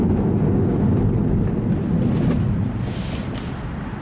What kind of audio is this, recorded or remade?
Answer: recorded